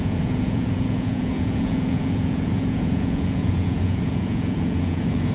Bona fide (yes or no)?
no